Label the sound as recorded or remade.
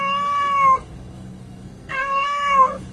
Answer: remade